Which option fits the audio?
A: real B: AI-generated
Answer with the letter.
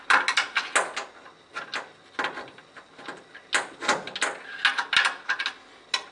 A